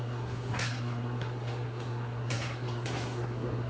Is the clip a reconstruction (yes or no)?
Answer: yes